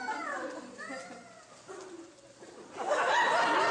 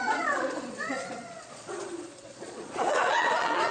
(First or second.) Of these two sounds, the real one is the first